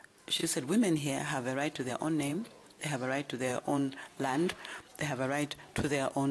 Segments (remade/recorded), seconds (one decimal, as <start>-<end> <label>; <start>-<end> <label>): 0.0-2.3 recorded; 2.3-2.9 remade; 2.9-3.5 recorded; 3.5-4.5 remade; 4.5-6.3 recorded